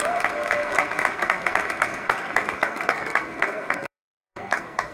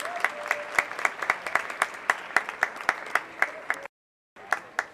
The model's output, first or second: first